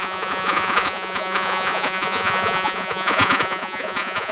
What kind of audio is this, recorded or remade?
remade